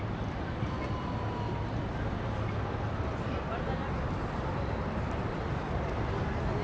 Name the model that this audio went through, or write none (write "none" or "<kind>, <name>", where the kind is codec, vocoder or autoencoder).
none